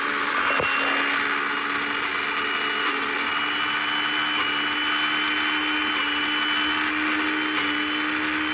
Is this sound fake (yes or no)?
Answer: no